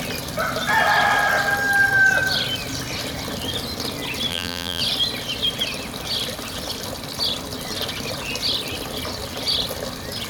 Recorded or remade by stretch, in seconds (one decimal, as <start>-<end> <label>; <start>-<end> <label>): 0.0-4.3 recorded; 4.3-4.8 remade; 4.8-10.3 recorded